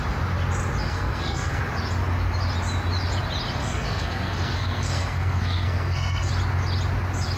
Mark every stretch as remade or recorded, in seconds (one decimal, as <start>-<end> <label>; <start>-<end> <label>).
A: 0.0-0.8 recorded; 0.8-1.6 remade; 1.6-3.6 recorded; 3.6-6.3 remade; 6.3-7.4 recorded